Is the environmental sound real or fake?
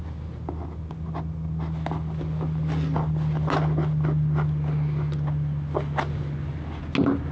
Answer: real